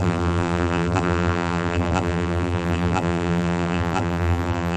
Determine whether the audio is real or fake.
fake